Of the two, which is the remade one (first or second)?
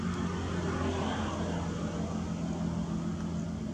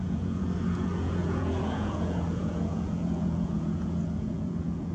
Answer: second